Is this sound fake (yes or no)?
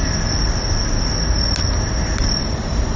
no